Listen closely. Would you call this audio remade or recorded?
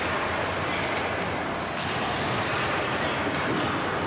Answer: recorded